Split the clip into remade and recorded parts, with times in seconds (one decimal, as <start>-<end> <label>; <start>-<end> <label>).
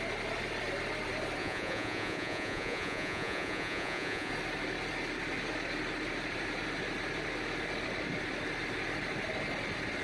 0.0-1.4 recorded; 1.4-4.3 remade; 4.3-10.0 recorded